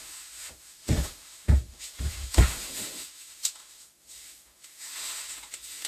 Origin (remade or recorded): remade